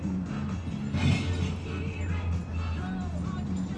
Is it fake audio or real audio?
real